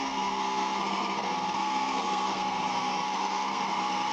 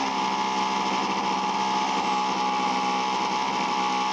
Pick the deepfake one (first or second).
first